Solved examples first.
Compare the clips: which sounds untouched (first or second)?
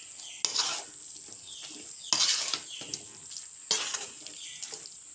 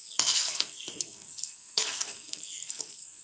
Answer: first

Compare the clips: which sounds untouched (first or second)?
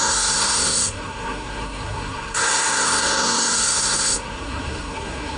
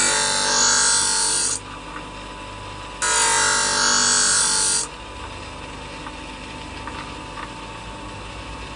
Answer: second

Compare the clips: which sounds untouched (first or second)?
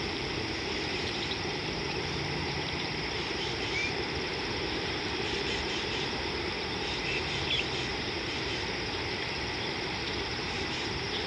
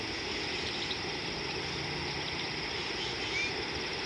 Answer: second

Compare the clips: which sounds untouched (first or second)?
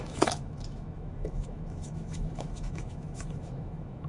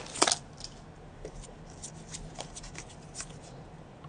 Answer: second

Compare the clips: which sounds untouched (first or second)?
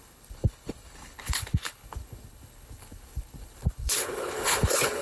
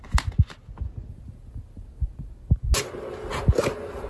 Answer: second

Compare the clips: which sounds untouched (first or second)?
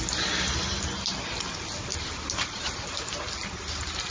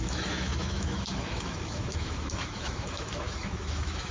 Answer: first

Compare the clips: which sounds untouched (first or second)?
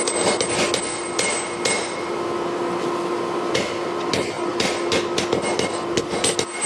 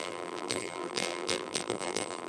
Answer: first